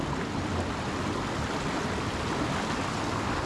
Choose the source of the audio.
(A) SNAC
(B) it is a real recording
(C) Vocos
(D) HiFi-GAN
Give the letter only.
B